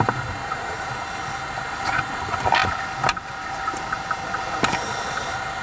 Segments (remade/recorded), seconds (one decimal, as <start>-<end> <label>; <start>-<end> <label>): 0.0-0.4 recorded; 0.4-0.9 remade; 0.9-5.6 recorded